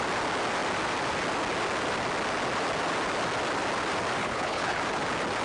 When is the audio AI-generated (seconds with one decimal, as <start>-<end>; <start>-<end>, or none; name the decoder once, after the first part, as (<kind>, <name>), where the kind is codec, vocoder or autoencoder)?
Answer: 4.2-4.8 (codec, HILCodec)